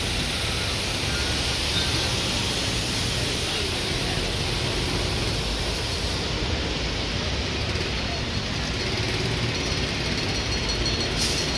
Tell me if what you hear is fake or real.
real